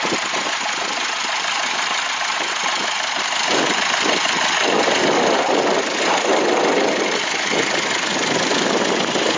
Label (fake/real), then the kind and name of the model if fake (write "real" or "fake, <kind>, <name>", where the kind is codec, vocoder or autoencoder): real